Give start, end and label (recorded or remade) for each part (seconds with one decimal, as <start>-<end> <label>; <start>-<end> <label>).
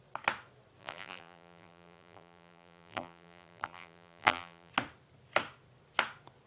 0.0-0.8 recorded; 0.8-4.7 remade; 4.7-6.5 recorded